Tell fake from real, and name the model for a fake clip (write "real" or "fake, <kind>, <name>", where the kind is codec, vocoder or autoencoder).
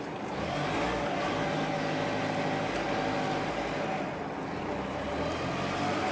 real